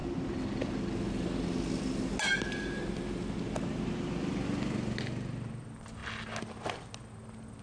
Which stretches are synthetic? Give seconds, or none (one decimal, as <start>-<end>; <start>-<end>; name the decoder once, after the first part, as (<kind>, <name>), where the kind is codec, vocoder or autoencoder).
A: none